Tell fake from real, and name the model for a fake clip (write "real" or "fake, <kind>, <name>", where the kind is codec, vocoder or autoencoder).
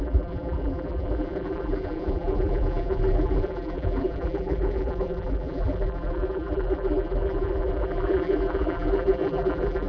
fake, vocoder, BigVGAN v2